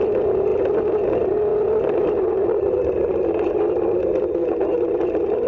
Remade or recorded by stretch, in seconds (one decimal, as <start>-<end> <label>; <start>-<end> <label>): 0.0-5.5 recorded